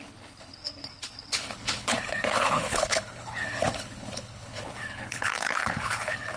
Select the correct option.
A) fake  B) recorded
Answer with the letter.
A